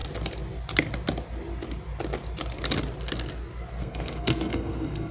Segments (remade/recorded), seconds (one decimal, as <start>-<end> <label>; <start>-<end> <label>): 0.0-3.8 recorded; 3.8-5.1 remade